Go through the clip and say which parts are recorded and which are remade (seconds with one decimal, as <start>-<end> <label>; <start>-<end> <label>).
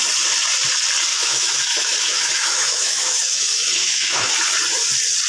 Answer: 0.0-1.1 recorded; 1.1-4.3 remade; 4.3-5.3 recorded